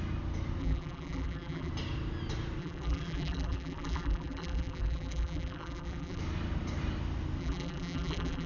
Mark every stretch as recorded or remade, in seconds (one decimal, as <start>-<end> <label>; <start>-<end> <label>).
0.0-0.6 recorded; 0.6-1.7 remade; 1.7-2.6 recorded; 2.6-6.2 remade; 6.2-7.4 recorded; 7.4-8.5 remade